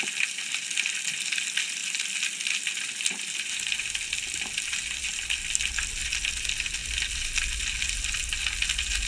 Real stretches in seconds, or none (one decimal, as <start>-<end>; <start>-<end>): 0.0-9.1